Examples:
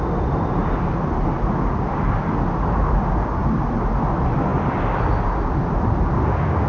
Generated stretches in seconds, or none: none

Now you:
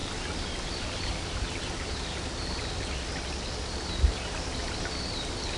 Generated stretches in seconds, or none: none

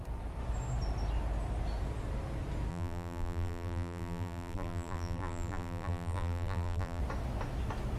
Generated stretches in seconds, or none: 2.7-7.0

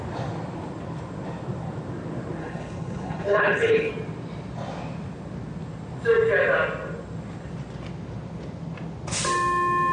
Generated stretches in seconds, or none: 2.4-3.9

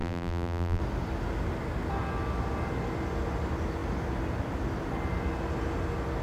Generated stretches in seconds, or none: 0.0-0.8